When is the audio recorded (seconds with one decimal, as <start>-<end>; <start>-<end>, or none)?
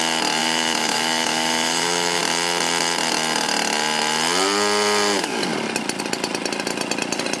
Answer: 0.0-0.4; 2.2-7.4